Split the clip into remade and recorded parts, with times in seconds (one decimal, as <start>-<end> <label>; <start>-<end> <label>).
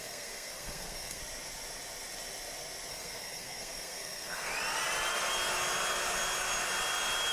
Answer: 0.0-1.2 remade; 1.2-2.9 recorded; 2.9-4.5 remade; 4.5-7.3 recorded